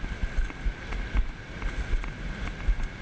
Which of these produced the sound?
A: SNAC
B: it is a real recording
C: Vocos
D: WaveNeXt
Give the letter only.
B